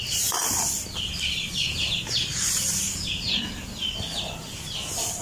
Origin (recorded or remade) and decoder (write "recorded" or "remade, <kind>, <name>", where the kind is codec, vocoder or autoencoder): remade, vocoder, BigVGAN v2